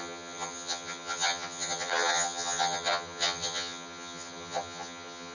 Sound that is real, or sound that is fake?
fake